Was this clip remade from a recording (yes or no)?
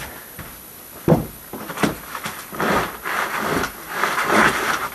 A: no